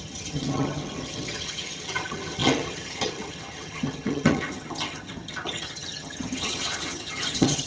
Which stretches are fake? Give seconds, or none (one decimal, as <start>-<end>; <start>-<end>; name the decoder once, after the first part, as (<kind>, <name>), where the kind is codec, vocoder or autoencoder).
0.0-7.7 (vocoder, HiFi-GAN)